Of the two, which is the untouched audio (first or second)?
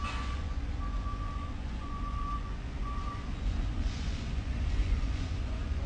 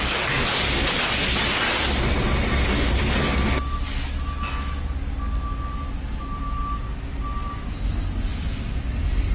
second